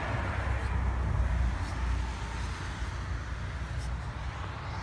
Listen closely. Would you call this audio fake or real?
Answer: real